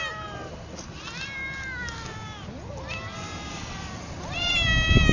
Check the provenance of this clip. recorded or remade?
recorded